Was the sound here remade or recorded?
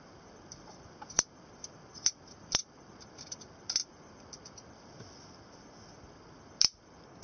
remade